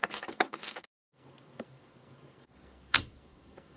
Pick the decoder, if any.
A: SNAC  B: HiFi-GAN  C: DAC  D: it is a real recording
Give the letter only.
A